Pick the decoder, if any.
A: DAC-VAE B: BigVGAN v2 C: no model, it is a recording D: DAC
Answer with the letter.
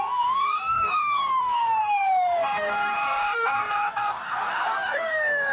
D